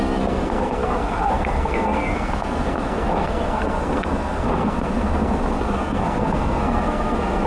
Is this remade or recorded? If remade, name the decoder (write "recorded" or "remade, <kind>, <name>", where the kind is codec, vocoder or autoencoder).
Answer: remade, codec, SNAC